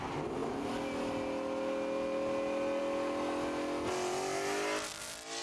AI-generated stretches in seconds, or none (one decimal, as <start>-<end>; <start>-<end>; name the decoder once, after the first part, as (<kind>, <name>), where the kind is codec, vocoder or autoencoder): none